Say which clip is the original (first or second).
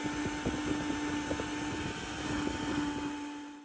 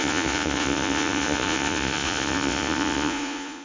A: first